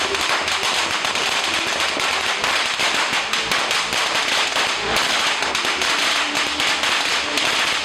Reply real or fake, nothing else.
real